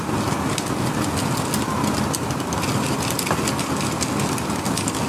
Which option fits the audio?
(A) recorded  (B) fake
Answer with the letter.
A